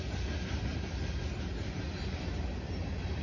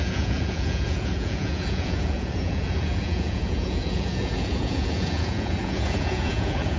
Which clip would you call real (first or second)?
first